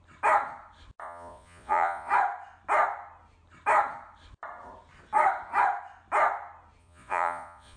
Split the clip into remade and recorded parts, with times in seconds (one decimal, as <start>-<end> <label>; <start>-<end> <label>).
0.0-1.0 recorded; 1.0-2.1 remade; 2.1-6.8 recorded; 6.8-7.8 remade